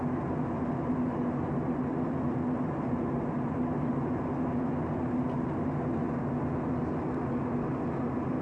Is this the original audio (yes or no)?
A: yes